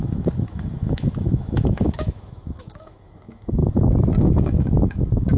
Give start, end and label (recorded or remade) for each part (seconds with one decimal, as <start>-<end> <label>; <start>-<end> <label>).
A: 0.0-3.6 remade; 3.6-4.2 recorded; 4.2-5.4 remade